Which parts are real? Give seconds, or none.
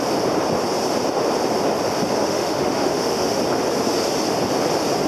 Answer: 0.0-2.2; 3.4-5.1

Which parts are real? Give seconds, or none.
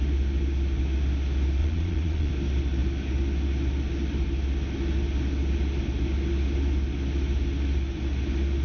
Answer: 0.0-1.6; 2.3-8.6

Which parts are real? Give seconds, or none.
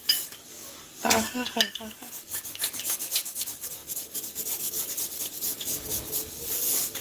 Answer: none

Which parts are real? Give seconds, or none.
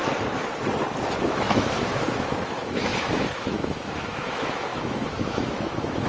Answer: 0.0-1.2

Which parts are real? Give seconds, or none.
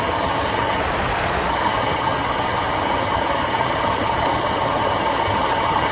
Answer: 0.8-1.5